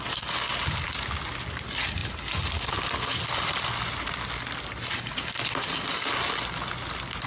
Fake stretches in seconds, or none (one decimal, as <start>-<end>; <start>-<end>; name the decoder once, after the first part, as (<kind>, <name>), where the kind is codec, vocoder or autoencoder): none